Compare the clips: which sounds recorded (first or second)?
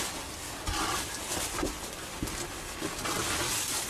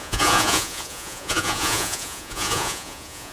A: first